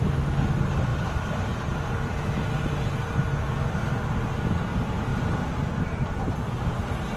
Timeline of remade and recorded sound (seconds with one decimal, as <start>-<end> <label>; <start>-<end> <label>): 0.0-7.2 recorded